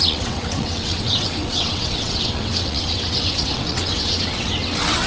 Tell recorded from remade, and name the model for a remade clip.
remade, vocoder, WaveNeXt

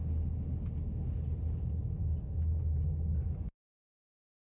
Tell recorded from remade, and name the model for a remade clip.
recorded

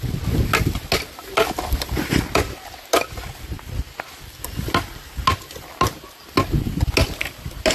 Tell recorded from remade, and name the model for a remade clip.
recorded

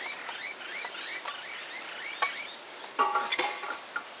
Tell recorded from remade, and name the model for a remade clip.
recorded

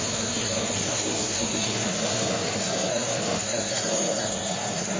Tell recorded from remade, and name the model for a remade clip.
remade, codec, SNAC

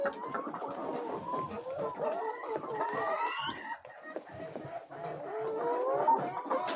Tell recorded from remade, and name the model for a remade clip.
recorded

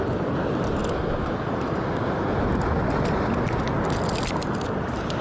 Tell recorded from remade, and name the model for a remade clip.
recorded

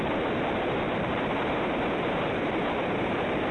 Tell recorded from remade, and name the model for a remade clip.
remade, vocoder, BigVGAN v2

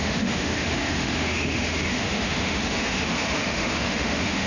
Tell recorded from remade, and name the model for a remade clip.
remade, autoencoder, DAC-VAE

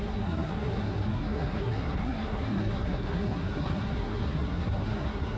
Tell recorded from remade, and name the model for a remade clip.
remade, codec, SNAC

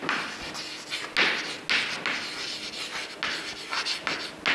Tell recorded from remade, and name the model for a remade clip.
recorded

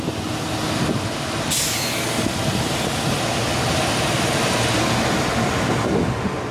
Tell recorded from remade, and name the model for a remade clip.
recorded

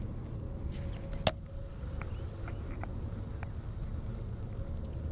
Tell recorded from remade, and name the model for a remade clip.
recorded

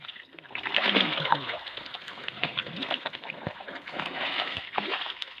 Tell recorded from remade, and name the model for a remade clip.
remade, codec, SNAC